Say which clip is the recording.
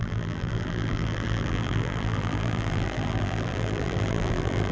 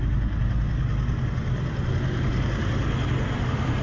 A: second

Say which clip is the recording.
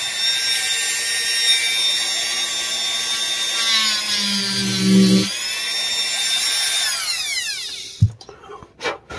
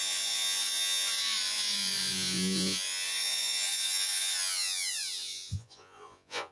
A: first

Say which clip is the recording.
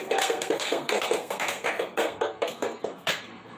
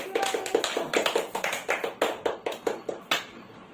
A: second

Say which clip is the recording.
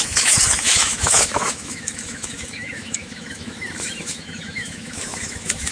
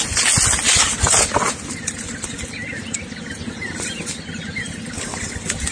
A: second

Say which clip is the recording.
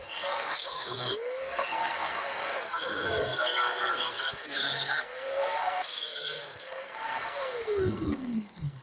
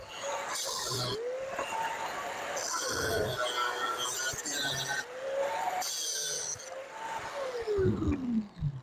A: second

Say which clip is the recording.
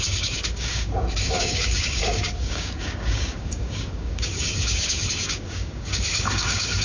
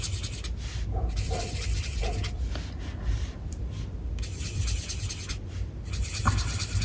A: second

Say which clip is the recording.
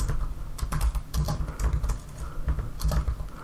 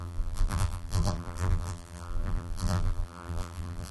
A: first